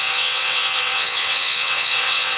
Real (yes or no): no